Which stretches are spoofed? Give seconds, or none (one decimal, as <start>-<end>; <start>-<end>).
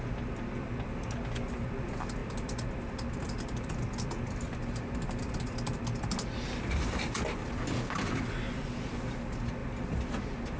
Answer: none